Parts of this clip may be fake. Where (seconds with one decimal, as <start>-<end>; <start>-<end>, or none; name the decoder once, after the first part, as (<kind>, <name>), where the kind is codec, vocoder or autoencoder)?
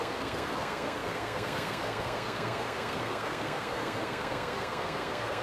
0.0-5.4 (codec, SNAC)